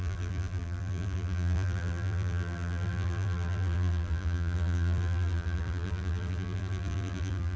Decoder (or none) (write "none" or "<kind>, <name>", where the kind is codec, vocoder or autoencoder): vocoder, BigVGAN v2